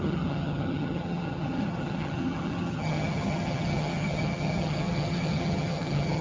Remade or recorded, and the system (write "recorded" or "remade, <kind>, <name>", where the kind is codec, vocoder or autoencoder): remade, vocoder, HiFi-GAN